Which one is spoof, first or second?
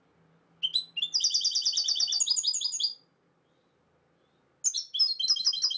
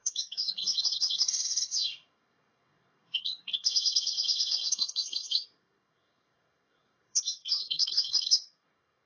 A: second